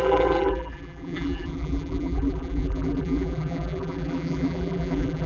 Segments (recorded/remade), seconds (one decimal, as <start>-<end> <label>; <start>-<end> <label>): 0.0-5.3 remade